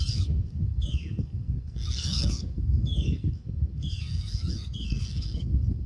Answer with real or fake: fake